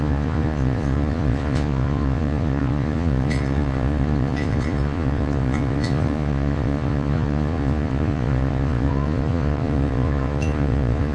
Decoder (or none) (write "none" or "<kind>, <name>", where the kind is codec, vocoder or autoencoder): vocoder, Vocos